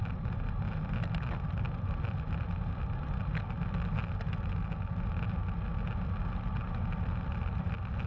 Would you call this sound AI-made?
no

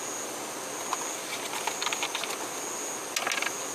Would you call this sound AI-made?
no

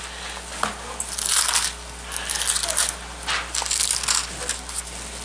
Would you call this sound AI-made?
no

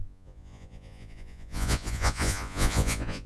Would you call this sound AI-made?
yes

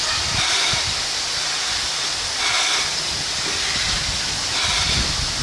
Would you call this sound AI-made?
no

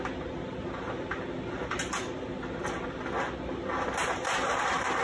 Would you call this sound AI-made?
no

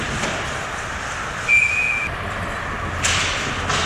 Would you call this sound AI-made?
no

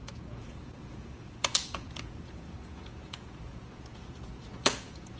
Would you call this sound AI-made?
yes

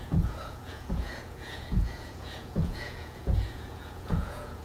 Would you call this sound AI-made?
yes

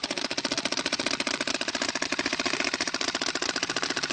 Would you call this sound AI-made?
no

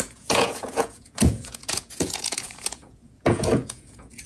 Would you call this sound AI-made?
yes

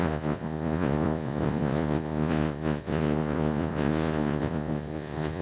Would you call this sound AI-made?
yes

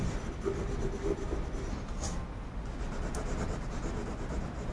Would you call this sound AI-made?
no